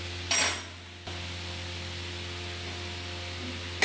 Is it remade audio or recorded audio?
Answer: recorded